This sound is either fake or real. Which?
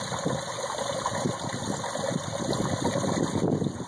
real